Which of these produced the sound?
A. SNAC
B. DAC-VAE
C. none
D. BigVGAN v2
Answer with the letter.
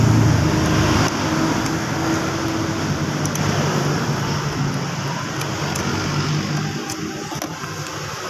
C